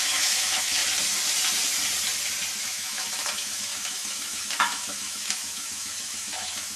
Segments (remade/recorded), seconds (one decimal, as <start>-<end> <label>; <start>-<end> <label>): 0.0-0.8 remade; 0.8-2.6 recorded; 2.6-6.8 remade